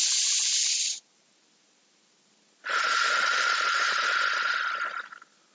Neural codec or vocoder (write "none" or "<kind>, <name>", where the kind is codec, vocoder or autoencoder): none